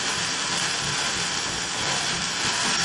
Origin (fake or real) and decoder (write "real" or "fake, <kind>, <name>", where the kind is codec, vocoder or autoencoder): real